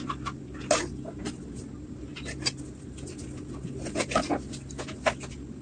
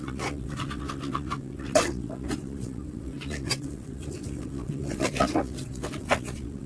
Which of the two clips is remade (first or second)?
second